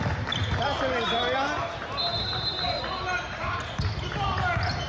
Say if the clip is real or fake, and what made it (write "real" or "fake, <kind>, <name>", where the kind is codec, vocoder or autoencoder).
real